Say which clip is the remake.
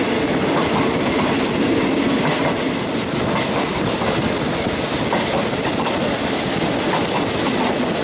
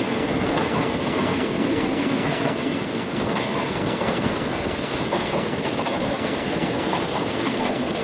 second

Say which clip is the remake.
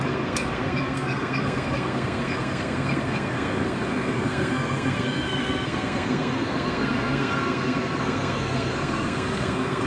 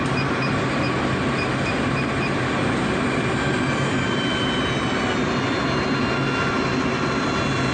first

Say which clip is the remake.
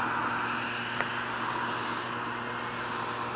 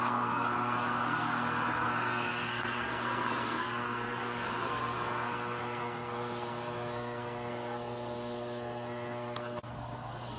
second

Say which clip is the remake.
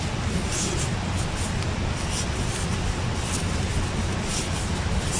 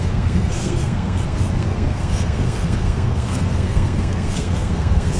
second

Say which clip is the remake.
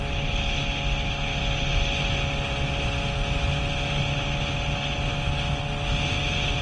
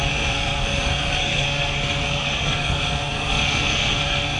second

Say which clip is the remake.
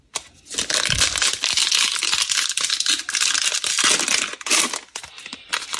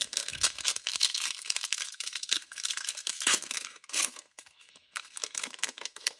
second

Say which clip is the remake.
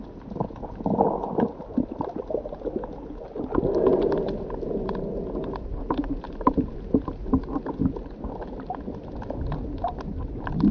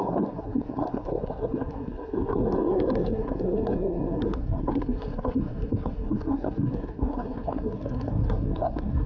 second